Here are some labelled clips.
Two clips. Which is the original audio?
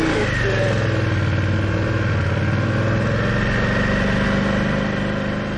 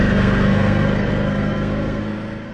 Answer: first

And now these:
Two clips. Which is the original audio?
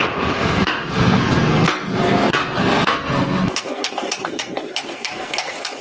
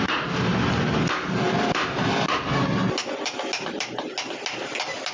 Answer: second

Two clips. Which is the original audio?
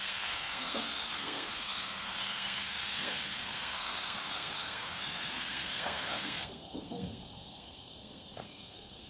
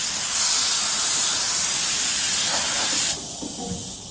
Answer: second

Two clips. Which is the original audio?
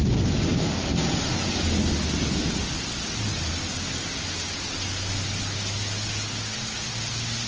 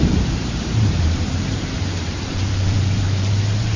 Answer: first